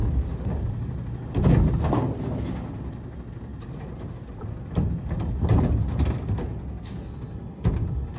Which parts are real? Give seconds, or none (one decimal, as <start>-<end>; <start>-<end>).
0.0-8.2